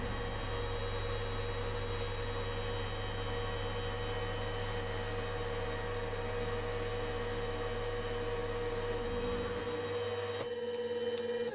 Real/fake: real